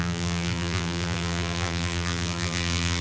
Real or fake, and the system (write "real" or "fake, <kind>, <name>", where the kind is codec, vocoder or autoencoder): fake, vocoder, BigVGAN v2